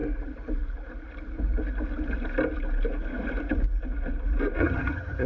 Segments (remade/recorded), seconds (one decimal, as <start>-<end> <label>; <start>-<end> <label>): 0.0-4.6 recorded; 4.6-5.3 remade